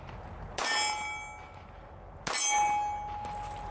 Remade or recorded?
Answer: recorded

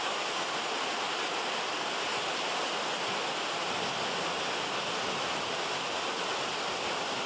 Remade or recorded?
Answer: recorded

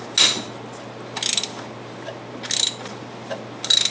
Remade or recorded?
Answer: recorded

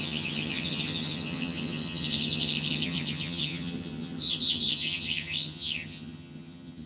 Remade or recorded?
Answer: remade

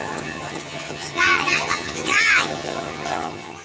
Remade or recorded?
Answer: remade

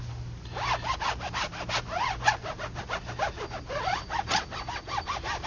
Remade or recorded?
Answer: recorded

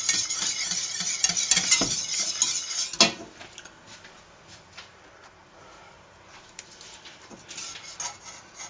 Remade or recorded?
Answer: recorded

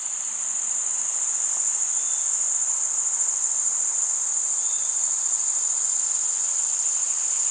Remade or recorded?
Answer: recorded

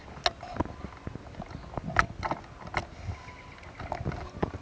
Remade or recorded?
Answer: recorded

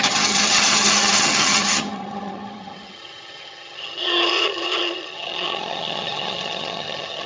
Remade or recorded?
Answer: remade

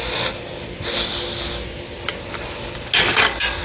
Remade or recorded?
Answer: recorded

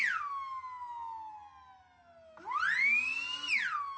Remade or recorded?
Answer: recorded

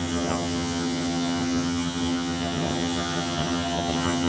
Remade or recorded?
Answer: remade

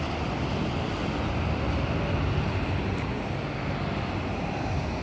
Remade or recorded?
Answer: recorded